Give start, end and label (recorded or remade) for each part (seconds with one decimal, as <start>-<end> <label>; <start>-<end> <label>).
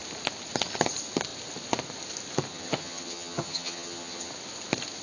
0.0-2.5 recorded; 2.5-4.3 remade; 4.3-5.0 recorded